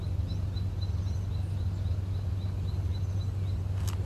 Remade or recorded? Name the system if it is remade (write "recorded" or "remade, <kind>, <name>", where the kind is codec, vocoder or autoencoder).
recorded